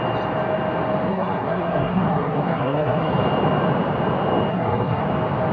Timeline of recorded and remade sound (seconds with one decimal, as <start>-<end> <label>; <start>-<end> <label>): 0.0-1.1 recorded; 1.1-3.1 remade; 3.1-4.5 recorded; 4.5-5.0 remade; 5.0-5.5 recorded

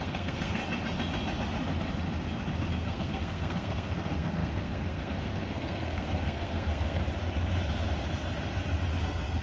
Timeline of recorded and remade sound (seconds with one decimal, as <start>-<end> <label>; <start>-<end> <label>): 0.0-0.6 remade; 0.6-2.7 recorded; 2.7-7.0 remade; 7.0-9.0 recorded; 9.0-9.4 remade

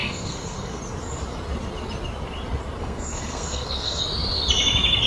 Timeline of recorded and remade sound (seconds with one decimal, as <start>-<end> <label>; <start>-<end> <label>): 0.0-0.8 remade; 0.8-2.8 recorded; 2.8-4.0 remade; 4.0-5.1 recorded

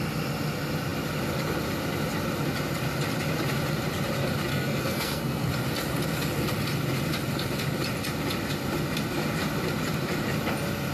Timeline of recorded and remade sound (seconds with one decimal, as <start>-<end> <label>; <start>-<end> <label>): 0.0-4.5 recorded; 4.5-5.5 remade; 5.5-10.9 recorded